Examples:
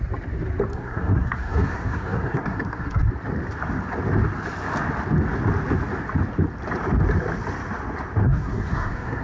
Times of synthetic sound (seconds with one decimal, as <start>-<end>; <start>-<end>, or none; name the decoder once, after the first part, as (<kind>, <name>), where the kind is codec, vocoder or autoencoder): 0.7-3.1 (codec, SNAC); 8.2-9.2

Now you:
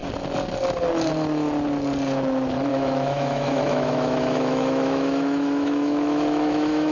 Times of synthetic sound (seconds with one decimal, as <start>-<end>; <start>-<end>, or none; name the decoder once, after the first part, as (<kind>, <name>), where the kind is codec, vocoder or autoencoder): 2.7-6.9 (autoencoder, DAC-VAE)

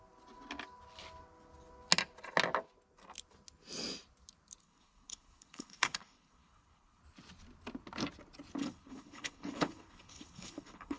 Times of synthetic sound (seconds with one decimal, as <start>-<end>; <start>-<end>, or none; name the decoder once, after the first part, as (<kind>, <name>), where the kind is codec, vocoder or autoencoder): 4.6-7.0 (codec, HILCodec); 8.6-11.0

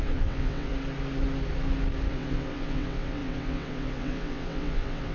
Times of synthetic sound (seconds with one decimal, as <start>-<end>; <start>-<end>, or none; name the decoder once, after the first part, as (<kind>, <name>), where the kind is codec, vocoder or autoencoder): 0.0-0.7 (vocoder, WaveNeXt); 2.1-5.1